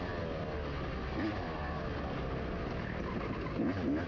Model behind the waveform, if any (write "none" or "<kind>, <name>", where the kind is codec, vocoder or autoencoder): none